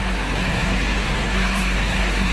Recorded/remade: remade